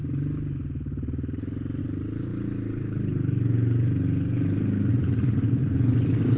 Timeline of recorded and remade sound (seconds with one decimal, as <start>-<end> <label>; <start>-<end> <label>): 0.0-1.8 recorded; 1.8-2.3 remade; 2.3-4.9 recorded; 4.9-6.4 remade